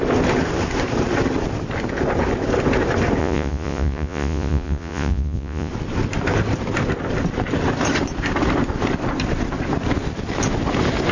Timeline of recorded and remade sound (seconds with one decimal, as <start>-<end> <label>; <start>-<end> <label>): 0.0-3.2 recorded; 3.2-5.7 remade; 5.7-11.1 recorded